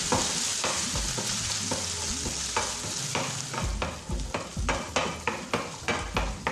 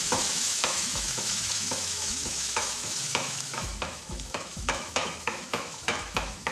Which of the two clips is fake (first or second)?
second